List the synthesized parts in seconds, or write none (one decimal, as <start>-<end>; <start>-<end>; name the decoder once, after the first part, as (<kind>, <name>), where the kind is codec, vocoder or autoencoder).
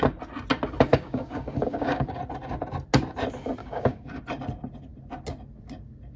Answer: 0.9-2.2 (codec, DAC); 3.6-4.2